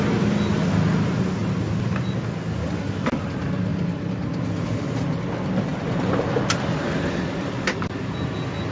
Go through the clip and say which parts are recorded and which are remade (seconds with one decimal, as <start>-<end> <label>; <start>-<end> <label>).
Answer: 0.0-3.7 recorded; 3.7-5.2 remade; 5.2-8.7 recorded